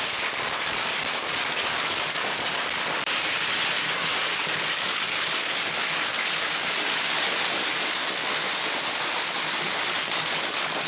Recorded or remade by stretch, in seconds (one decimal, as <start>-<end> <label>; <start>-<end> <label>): 0.0-8.0 remade; 8.0-9.6 recorded; 9.6-10.9 remade